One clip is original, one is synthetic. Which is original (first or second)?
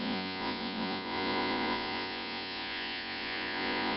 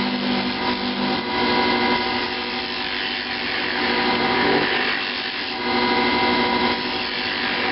second